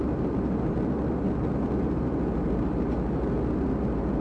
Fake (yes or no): no